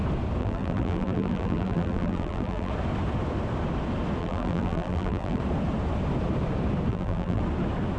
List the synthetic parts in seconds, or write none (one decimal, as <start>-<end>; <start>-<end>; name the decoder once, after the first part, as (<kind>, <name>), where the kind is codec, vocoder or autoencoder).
0.4-2.7 (vocoder, BigVGAN v2); 4.2-5.4; 6.9-7.4